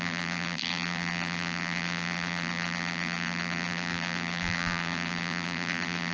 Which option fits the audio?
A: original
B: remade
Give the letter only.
B